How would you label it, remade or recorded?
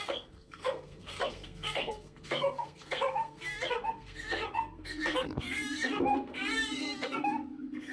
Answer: remade